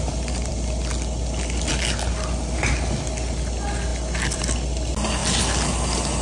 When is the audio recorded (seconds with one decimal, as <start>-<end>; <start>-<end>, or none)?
0.0-6.2